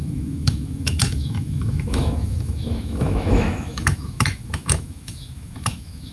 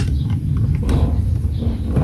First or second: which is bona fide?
second